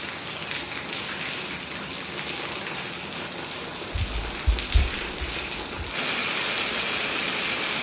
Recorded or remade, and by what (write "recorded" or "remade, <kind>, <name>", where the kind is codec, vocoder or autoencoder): recorded